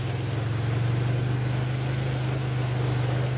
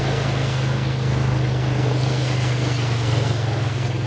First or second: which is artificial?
second